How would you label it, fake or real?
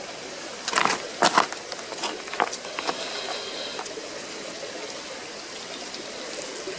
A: real